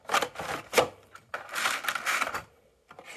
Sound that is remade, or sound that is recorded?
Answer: recorded